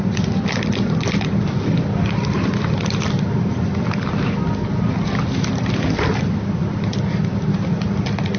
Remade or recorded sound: recorded